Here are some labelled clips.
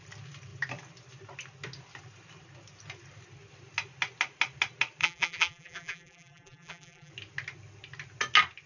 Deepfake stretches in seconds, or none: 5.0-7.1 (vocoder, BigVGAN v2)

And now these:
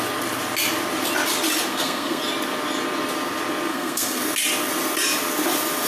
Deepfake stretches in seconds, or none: 1.7-2.2 (codec, SNAC); 3.7-4.2

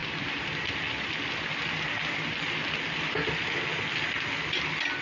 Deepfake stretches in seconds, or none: none

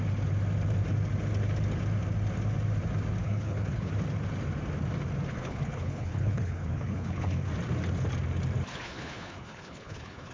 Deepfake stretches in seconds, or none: 3.2-3.9 (codec, HILCodec); 5.3-7.5; 8.7-10.3

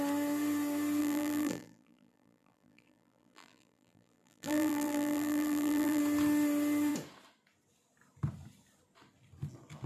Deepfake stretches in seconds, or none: 1.0-6.0 (vocoder, BigVGAN v2)

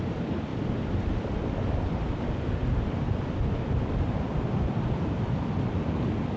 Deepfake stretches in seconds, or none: 0.5-2.1 (vocoder, BigVGAN v2); 2.6-5.7

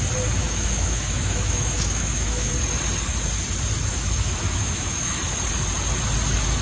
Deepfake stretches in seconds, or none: 0.4-2.5 (autoencoder, DAC-VAE); 3.9-5.2